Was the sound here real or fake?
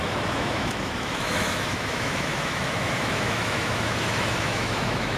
fake